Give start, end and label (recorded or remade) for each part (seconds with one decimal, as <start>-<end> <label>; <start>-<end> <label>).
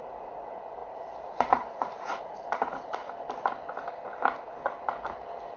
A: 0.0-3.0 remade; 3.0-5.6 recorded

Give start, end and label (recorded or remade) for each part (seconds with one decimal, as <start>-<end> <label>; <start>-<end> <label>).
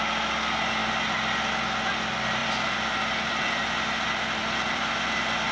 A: 0.0-0.8 recorded; 0.8-1.5 remade; 1.5-2.4 recorded; 2.4-3.7 remade; 3.7-4.4 recorded; 4.4-4.9 remade; 4.9-5.5 recorded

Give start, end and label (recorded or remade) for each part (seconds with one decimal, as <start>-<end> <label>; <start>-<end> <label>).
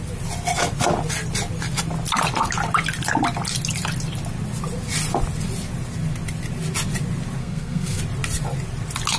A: 0.0-7.4 recorded; 7.4-8.0 remade; 8.0-9.2 recorded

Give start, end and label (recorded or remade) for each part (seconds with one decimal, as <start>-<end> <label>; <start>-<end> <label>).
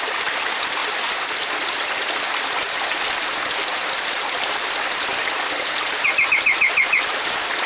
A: 0.0-7.7 recorded